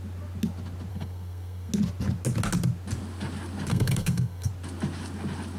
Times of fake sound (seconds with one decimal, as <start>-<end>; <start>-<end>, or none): 0.9-1.7; 3.7-4.5